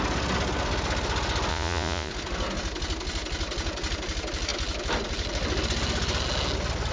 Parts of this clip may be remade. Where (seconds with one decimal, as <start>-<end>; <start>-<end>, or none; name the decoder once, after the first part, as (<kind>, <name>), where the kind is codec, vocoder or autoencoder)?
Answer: 1.5-2.1 (vocoder, Vocos)